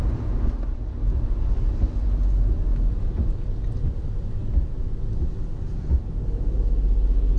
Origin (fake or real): real